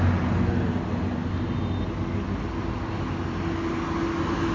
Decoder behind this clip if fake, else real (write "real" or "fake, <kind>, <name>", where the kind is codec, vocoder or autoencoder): real